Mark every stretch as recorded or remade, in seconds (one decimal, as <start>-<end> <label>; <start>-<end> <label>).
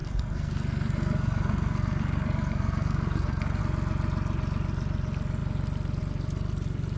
0.0-3.6 remade; 3.6-7.0 recorded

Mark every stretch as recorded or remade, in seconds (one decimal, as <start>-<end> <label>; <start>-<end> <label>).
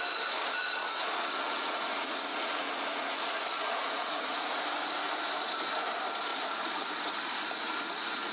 0.0-0.8 recorded; 0.8-4.6 remade; 4.6-6.3 recorded; 6.3-8.3 remade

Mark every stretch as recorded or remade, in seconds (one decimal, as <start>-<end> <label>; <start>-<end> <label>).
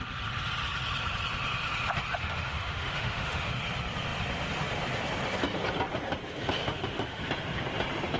0.0-2.2 recorded; 2.2-3.5 remade; 3.5-6.6 recorded; 6.6-7.2 remade; 7.2-8.2 recorded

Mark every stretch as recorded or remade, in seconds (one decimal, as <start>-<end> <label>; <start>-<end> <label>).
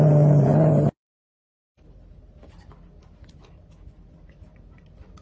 0.0-5.2 recorded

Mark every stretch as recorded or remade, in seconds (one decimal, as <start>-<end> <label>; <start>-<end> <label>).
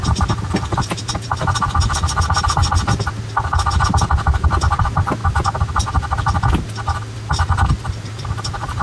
0.0-2.6 remade; 2.6-4.8 recorded; 4.8-5.2 remade; 5.2-7.9 recorded; 7.9-8.8 remade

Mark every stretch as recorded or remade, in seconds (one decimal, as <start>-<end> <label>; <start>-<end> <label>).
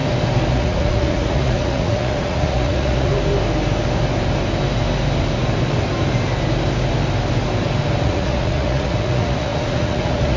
0.0-0.5 recorded; 0.5-3.1 remade; 3.1-8.0 recorded; 8.0-10.4 remade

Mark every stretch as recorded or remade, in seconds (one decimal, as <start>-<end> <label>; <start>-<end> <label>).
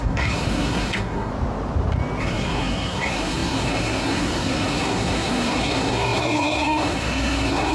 0.0-1.3 remade; 1.3-2.2 recorded; 2.2-7.7 remade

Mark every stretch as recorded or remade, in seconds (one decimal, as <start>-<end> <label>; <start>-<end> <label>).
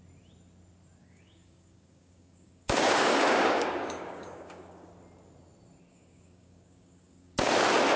0.0-1.0 recorded; 1.0-4.9 remade; 4.9-5.9 recorded; 5.9-7.5 remade; 7.5-8.0 recorded